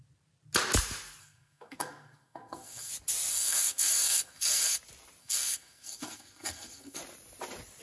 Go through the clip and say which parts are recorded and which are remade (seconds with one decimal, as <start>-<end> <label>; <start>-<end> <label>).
0.0-1.2 recorded; 1.2-2.9 remade; 2.9-3.3 recorded; 3.3-4.8 remade; 4.8-5.2 recorded; 5.2-7.0 remade; 7.0-7.8 recorded